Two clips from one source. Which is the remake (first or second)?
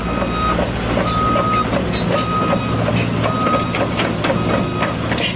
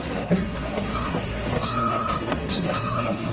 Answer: second